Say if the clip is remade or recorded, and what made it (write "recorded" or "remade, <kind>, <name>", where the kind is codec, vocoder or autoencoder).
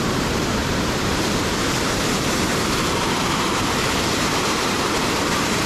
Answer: remade, vocoder, BigVGAN v2